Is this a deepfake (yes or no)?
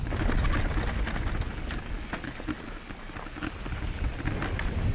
no